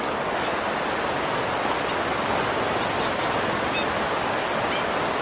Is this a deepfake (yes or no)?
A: no